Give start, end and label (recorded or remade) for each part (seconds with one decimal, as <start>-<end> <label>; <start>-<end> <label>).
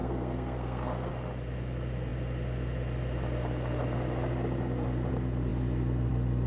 0.0-1.1 remade; 1.1-6.5 recorded